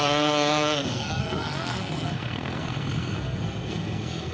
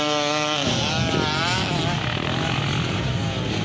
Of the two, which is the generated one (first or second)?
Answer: first